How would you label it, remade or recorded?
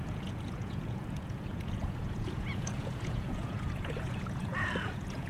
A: remade